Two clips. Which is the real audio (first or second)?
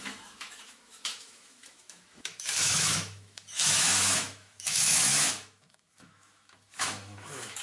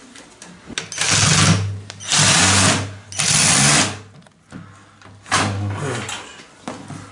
second